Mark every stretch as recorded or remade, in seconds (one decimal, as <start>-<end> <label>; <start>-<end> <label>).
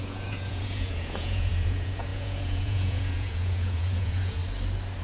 0.0-4.4 remade; 4.4-5.0 recorded